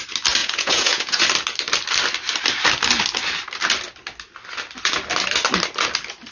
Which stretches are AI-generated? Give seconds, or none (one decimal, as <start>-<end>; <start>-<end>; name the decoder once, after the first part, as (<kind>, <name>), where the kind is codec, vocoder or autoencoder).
0.4-1.2 (vocoder, Vocos)